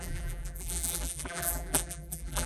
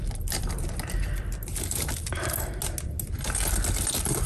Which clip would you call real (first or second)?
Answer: second